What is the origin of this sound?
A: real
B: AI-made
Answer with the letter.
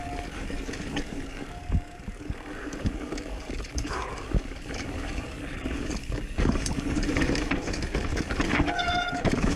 B